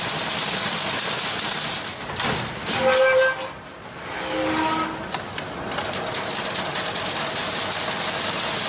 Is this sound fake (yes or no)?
no